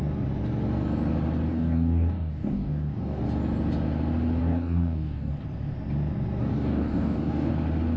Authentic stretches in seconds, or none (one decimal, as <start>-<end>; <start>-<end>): 0.0-1.5; 3.2-4.4; 5.3-6.5; 7.5-8.0